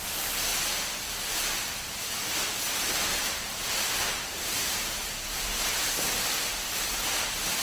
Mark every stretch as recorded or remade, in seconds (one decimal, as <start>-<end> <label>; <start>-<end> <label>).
0.0-3.1 recorded; 3.1-5.6 remade; 5.6-6.9 recorded; 6.9-7.6 remade